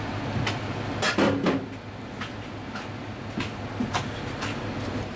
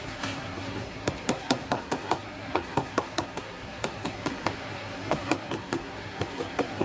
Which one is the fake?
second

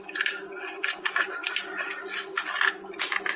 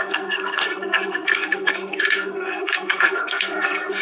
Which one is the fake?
second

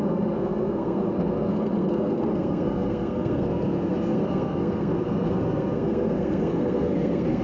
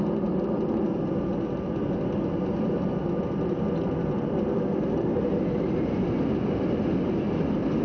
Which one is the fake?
first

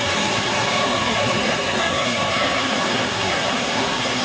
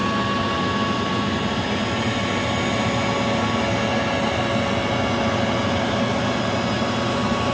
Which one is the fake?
first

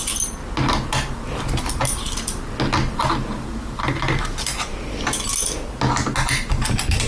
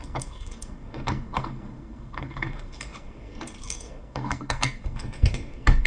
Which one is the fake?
second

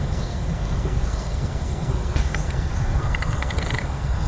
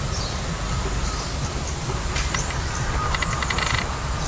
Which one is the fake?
first